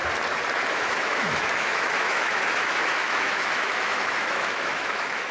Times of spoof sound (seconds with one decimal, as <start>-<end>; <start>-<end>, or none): 0.7-5.3